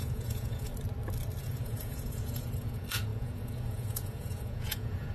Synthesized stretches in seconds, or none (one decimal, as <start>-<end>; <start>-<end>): 0.0-0.7; 1.4-5.1

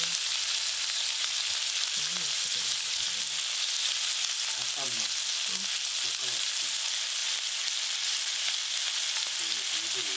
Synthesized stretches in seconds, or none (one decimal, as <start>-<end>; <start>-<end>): none

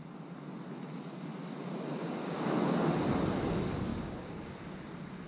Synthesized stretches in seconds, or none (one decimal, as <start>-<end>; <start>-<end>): 2.0-2.7; 3.9-4.4